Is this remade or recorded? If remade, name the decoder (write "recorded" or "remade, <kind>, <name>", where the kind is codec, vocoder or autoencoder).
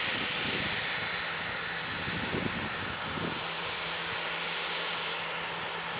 recorded